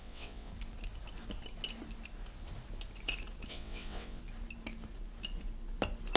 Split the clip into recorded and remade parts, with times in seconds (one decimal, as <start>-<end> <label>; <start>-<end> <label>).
0.0-0.5 remade; 0.5-3.5 recorded; 3.5-4.2 remade; 4.2-6.2 recorded